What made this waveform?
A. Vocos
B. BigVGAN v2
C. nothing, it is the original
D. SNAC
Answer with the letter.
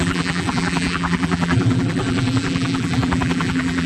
B